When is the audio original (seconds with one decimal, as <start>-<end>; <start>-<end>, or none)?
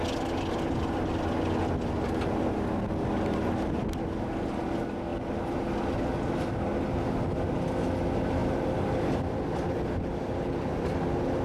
0.0-8.4; 10.3-11.4